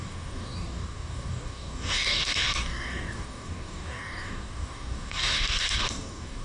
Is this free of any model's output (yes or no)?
no